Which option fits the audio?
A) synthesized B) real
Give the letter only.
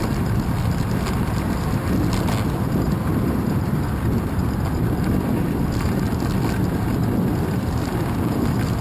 B